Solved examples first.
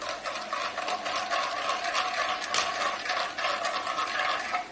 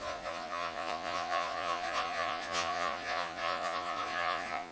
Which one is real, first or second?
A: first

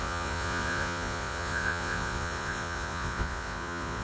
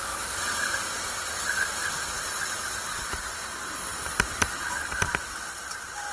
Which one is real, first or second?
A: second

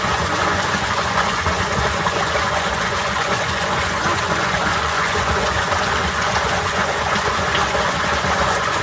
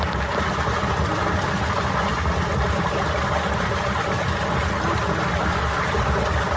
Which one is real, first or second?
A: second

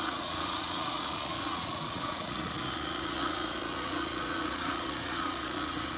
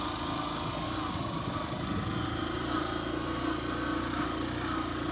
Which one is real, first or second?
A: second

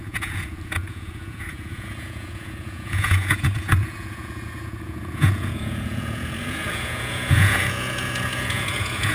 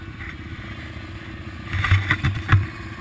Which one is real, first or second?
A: second